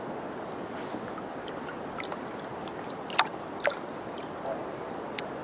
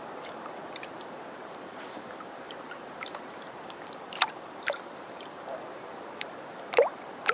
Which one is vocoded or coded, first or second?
second